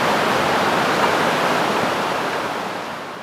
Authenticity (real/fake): real